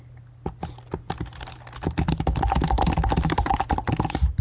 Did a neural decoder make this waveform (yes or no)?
no